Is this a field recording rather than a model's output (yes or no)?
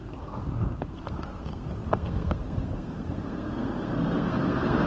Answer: no